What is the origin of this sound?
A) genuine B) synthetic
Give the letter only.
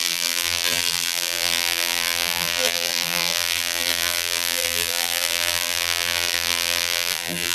B